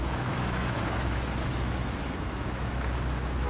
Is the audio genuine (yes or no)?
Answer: no